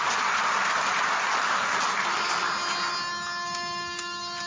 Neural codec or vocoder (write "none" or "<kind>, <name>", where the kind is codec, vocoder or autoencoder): none